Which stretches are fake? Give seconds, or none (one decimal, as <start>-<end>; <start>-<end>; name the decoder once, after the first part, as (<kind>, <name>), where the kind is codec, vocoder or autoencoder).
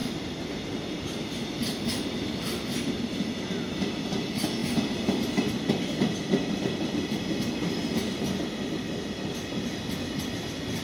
none